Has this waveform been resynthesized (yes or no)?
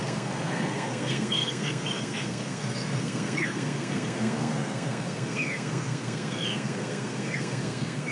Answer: yes